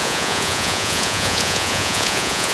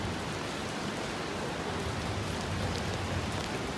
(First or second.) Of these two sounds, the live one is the second